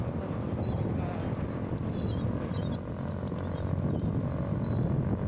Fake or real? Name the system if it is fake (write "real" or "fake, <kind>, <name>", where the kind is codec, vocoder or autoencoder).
real